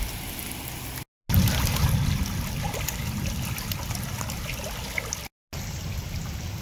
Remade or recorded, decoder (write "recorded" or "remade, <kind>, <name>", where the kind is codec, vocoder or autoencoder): recorded